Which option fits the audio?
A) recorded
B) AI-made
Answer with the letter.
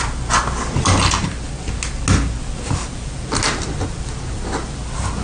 A